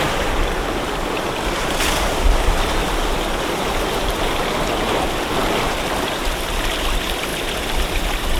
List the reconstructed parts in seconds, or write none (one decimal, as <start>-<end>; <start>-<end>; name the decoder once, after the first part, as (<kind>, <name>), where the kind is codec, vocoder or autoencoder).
0.0-7.3 (vocoder, BigVGAN v2); 8.0-8.4